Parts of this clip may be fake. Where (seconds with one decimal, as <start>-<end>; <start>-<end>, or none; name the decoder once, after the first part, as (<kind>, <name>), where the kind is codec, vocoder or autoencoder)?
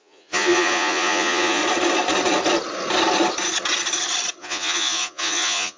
0.0-1.6 (vocoder, Vocos); 4.4-5.8